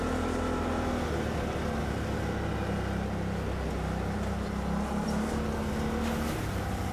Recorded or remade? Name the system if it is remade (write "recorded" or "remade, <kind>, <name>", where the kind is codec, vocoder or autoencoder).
recorded